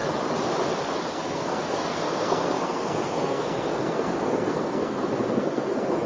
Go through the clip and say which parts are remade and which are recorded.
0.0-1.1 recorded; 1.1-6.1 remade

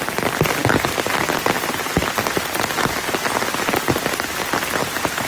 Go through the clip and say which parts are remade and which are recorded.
0.0-5.3 recorded

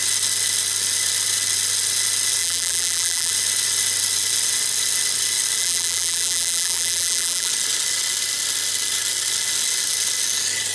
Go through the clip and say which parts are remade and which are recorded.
0.0-2.4 recorded; 2.4-3.3 remade; 3.3-5.6 recorded; 5.6-7.5 remade; 7.5-10.7 recorded

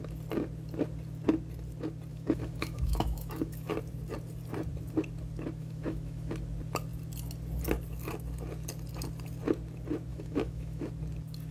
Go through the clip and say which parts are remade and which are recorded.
0.0-2.1 recorded; 2.1-3.7 remade; 3.7-5.6 recorded; 5.6-6.3 remade; 6.3-10.1 recorded; 10.1-10.9 remade; 10.9-11.5 recorded

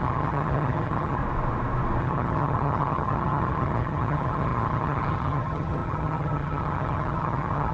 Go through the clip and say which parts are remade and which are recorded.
0.0-1.2 remade; 1.2-2.0 recorded; 2.0-7.7 remade

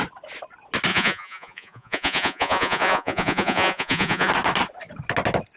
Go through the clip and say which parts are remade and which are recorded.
0.0-0.9 recorded; 0.9-4.3 remade; 4.3-5.6 recorded

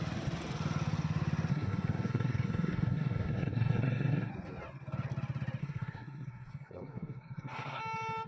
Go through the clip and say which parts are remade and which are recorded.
0.0-1.5 recorded; 1.5-4.3 remade; 4.3-5.6 recorded; 5.6-7.8 remade; 7.8-8.3 recorded

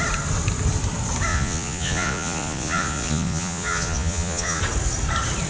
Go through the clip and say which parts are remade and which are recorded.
0.0-1.3 recorded; 1.3-4.6 remade; 4.6-5.5 recorded